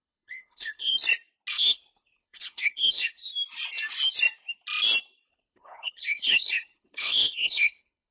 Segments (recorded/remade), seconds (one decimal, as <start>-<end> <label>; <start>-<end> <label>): 0.0-0.9 remade; 0.9-1.5 recorded; 1.5-3.2 remade; 3.2-5.3 recorded; 5.3-8.1 remade